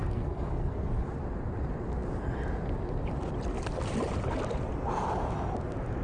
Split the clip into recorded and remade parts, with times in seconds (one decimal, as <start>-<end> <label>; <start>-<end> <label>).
0.0-0.9 remade; 0.9-6.0 recorded